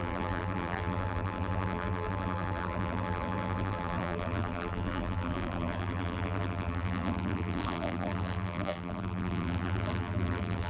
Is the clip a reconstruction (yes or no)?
yes